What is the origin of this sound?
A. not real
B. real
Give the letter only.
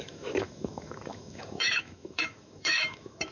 A